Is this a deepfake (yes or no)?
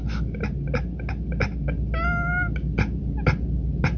no